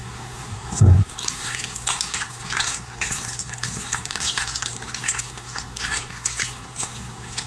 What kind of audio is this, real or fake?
fake